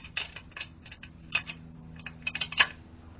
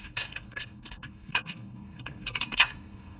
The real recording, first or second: first